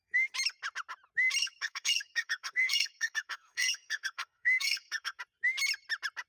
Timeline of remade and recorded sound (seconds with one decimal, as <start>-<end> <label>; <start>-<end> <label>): 0.0-1.4 recorded; 1.4-5.2 remade; 5.2-6.3 recorded